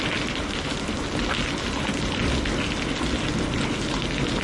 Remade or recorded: recorded